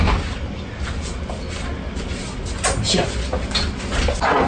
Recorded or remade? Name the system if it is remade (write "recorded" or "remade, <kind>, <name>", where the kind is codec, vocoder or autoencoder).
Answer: recorded